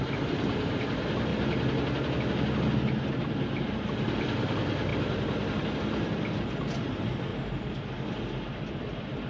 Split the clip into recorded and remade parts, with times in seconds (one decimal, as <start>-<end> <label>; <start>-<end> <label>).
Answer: 0.0-1.3 remade; 1.3-3.6 recorded; 3.6-4.9 remade; 4.9-5.6 recorded; 5.6-7.3 remade; 7.3-8.0 recorded; 8.0-9.3 remade